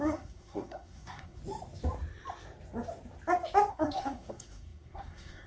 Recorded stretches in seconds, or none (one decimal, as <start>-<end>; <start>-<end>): 1.4-3.7